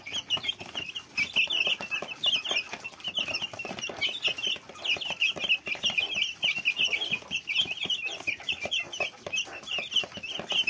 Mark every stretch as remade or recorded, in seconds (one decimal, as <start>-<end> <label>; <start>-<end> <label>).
0.0-10.7 recorded